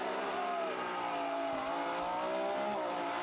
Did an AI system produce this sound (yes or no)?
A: no